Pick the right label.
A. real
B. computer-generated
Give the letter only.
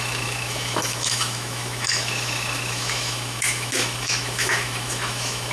B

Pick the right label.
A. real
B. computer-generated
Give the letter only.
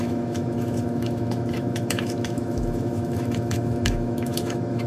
B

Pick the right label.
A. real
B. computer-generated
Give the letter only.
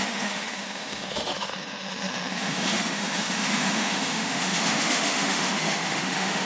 B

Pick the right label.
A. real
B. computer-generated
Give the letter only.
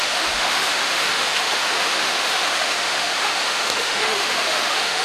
B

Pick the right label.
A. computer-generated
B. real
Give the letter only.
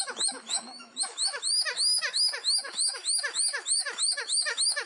A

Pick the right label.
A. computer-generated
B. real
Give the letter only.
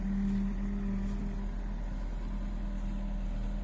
B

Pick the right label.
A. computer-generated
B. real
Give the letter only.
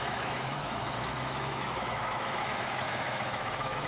A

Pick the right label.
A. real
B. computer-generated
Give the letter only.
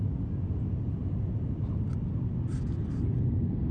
A